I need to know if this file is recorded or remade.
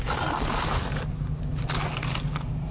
recorded